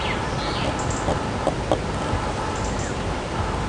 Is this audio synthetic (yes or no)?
no